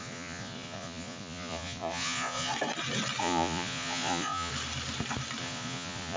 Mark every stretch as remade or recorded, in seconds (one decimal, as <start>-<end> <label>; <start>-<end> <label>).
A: 0.0-2.5 remade; 2.5-3.2 recorded; 3.2-4.5 remade; 4.5-5.4 recorded; 5.4-6.2 remade